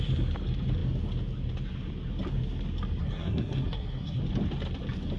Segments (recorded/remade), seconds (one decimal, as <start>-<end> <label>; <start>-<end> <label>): 0.0-3.0 recorded; 3.0-4.2 remade; 4.2-5.2 recorded